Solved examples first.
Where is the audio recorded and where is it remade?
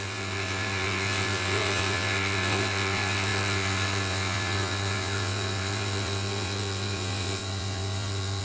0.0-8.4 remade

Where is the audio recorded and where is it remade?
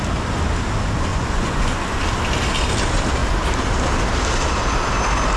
0.0-1.1 recorded; 1.1-2.0 remade; 2.0-5.4 recorded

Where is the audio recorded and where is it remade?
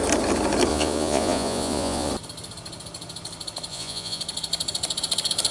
0.0-0.7 recorded; 0.7-2.1 remade; 2.1-3.7 recorded; 3.7-4.2 remade; 4.2-5.5 recorded